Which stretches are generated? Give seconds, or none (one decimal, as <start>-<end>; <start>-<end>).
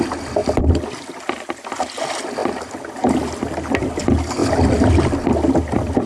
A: none